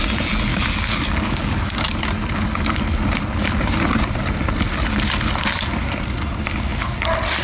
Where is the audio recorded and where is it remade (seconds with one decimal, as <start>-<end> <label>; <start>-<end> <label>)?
0.0-0.5 recorded; 0.5-2.0 remade; 2.0-7.4 recorded